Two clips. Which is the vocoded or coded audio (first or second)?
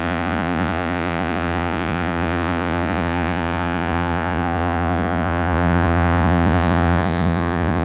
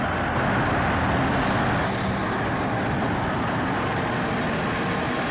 first